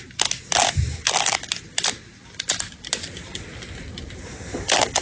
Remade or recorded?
recorded